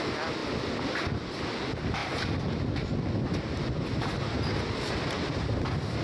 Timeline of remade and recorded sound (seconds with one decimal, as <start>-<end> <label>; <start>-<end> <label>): 0.0-6.0 recorded